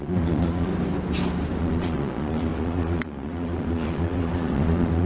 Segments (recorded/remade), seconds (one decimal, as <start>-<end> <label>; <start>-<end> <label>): 0.0-0.7 remade; 0.7-1.6 recorded; 1.6-5.1 remade